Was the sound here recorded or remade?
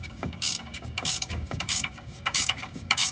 remade